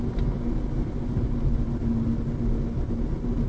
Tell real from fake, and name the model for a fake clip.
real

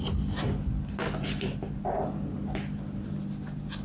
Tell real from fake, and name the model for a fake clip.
real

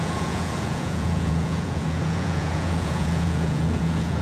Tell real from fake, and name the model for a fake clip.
fake, vocoder, Vocos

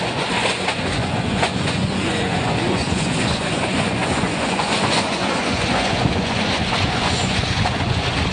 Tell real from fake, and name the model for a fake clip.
fake, vocoder, Vocos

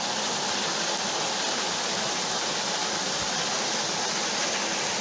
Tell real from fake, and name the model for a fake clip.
real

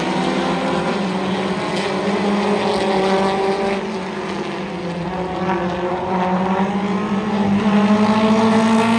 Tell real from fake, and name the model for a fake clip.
real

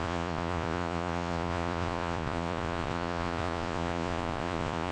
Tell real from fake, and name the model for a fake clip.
fake, vocoder, Vocos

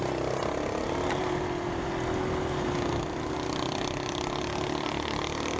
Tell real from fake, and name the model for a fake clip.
real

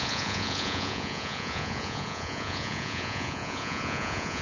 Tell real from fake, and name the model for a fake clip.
fake, vocoder, Vocos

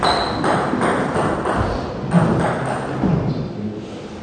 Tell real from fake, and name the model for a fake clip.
real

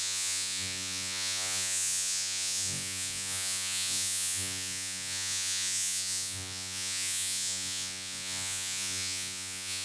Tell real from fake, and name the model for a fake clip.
fake, vocoder, Vocos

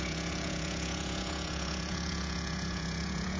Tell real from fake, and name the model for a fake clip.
fake, vocoder, Vocos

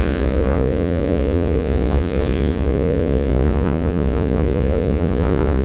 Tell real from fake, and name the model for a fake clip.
fake, vocoder, Vocos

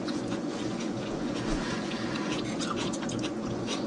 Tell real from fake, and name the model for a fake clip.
fake, vocoder, Vocos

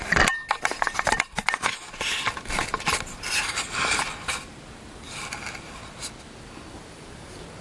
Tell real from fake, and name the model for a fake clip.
real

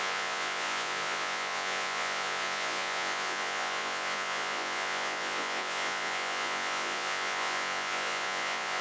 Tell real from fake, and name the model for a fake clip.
fake, vocoder, Vocos